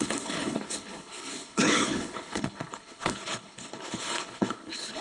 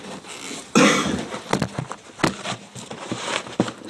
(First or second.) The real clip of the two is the second